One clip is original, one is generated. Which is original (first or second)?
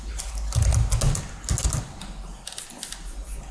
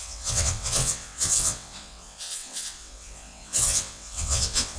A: first